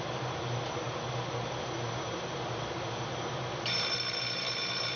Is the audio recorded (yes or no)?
yes